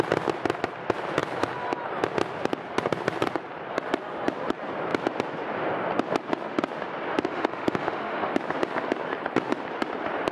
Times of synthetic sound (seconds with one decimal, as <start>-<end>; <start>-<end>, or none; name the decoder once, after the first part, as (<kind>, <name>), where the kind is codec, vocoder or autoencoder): 7.1-8.3 (autoencoder, DAC-VAE)